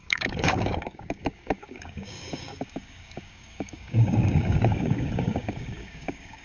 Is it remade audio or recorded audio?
remade